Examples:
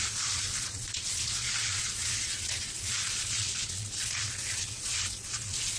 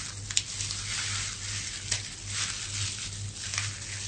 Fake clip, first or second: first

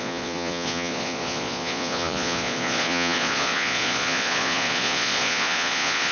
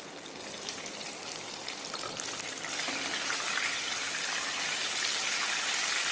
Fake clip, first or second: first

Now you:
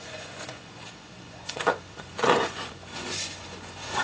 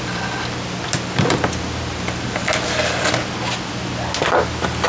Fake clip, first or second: first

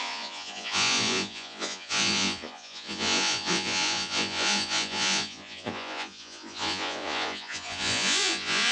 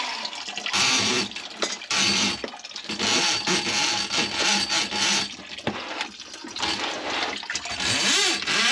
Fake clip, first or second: first